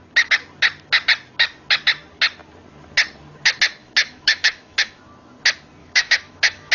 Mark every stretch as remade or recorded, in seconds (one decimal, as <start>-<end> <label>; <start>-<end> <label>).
0.0-3.8 recorded; 3.8-5.0 remade; 5.0-5.8 recorded; 5.8-6.7 remade

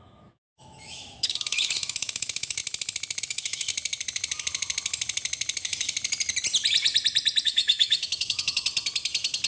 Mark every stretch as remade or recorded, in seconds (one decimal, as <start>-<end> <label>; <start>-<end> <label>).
0.0-2.6 remade; 2.6-3.2 recorded; 3.2-3.7 remade; 3.7-7.4 recorded; 7.4-8.7 remade; 8.7-9.5 recorded